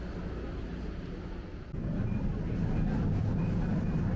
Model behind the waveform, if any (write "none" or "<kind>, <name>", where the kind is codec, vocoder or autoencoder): none